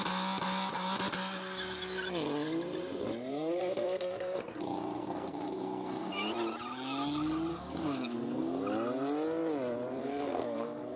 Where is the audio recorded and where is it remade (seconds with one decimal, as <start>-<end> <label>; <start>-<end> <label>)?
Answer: 0.0-3.3 recorded; 3.3-6.1 remade; 6.1-7.5 recorded; 7.5-8.6 remade; 8.6-10.0 recorded; 10.0-11.0 remade